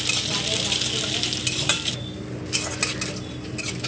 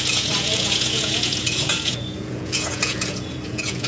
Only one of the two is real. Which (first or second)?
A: first